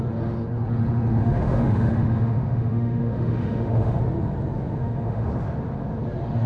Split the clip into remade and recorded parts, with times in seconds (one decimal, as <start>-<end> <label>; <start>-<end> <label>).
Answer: 0.0-1.2 recorded; 1.2-4.0 remade; 4.0-4.8 recorded; 4.8-5.3 remade; 5.3-6.5 recorded